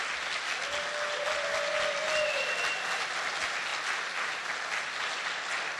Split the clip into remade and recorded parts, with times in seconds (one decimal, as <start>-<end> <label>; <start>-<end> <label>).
0.0-5.8 recorded